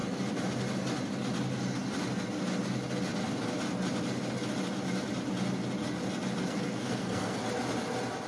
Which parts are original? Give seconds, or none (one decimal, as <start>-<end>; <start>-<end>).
0.0-6.4; 7.4-8.3